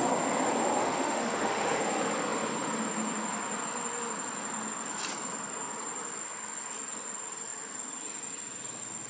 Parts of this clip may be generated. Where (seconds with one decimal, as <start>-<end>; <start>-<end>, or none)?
0.8-1.8